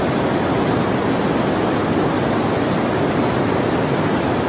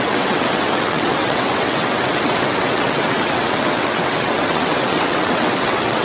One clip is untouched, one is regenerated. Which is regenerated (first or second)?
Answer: second